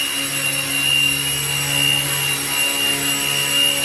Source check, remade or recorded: recorded